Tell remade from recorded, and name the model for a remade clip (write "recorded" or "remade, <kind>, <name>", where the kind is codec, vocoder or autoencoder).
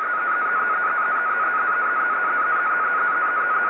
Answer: remade, autoencoder, DAC-VAE